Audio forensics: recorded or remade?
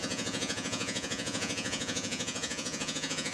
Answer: remade